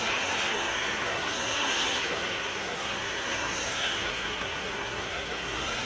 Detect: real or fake fake